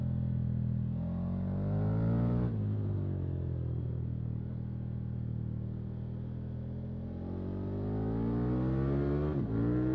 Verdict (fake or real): real